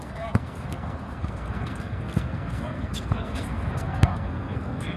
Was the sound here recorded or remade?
remade